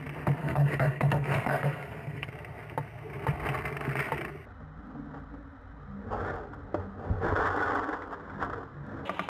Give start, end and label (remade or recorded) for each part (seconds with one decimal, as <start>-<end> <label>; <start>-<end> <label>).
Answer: 0.0-0.4 recorded; 0.4-2.3 remade; 2.3-9.3 recorded